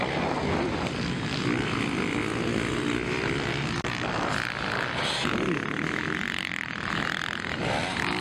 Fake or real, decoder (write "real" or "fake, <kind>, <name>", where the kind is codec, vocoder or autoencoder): real